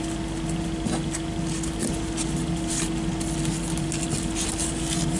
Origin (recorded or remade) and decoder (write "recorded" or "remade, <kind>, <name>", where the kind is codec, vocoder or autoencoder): recorded